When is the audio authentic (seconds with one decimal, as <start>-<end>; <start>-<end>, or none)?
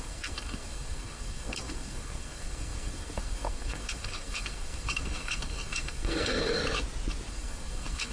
6.6-7.3